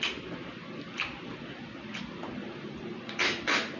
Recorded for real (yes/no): no